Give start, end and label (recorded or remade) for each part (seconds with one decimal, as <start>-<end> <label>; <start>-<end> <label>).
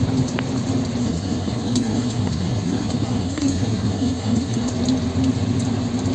0.0-1.0 recorded; 1.0-4.7 remade; 4.7-6.1 recorded